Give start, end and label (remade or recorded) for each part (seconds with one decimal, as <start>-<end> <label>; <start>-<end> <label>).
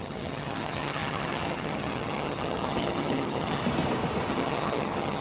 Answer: 0.0-3.6 remade; 3.6-4.3 recorded; 4.3-5.2 remade